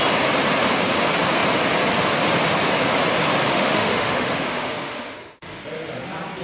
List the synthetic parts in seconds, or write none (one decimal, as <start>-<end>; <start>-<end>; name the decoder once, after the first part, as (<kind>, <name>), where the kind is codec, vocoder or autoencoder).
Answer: 3.5-5.6 (autoencoder, DAC-VAE)